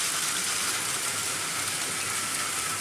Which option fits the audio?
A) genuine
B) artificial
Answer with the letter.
A